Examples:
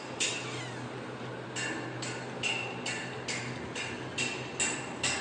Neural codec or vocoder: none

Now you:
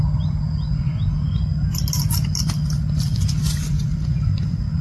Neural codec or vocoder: none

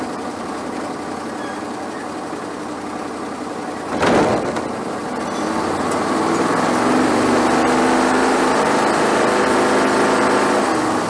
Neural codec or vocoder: none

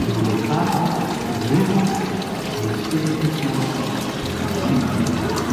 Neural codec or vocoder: none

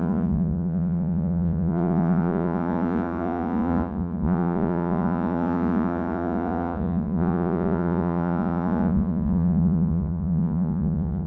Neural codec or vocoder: vocoder, Vocos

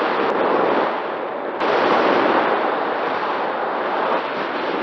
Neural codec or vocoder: vocoder, BigVGAN v2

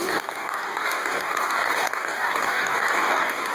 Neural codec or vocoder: codec, DAC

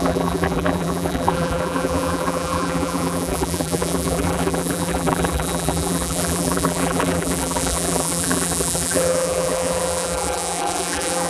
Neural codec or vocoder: vocoder, BigVGAN v2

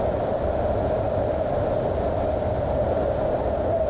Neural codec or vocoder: none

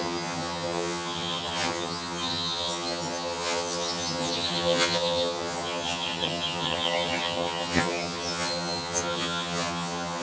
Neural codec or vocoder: vocoder, HiFi-GAN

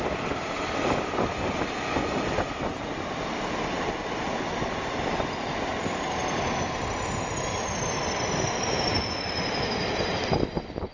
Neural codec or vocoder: none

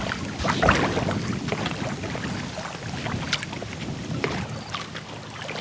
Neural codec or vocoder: none